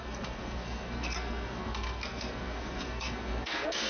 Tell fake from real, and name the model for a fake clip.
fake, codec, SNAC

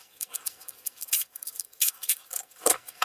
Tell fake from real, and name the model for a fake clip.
fake, codec, SNAC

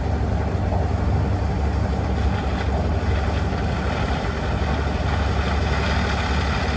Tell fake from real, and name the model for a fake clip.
real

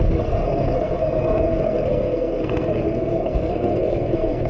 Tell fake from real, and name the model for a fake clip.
fake, codec, SNAC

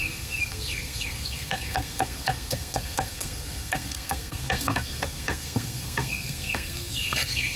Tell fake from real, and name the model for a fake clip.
fake, codec, SNAC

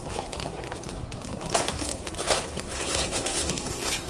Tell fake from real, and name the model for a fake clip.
fake, codec, SNAC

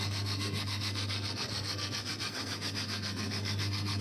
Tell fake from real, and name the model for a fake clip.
fake, codec, SNAC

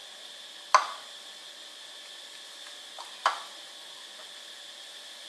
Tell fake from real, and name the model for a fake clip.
real